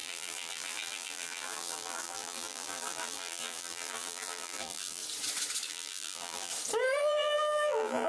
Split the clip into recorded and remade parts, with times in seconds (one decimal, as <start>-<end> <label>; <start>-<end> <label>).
0.0-5.0 remade; 5.0-5.7 recorded; 5.7-6.5 remade; 6.5-7.0 recorded; 7.0-8.1 remade